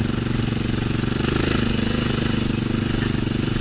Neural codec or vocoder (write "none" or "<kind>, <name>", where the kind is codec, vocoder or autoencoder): none